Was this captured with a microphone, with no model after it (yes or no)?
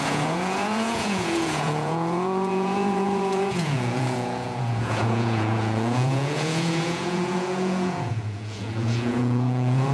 no